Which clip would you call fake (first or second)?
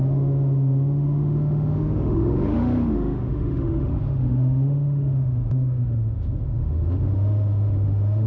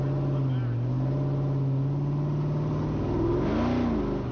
first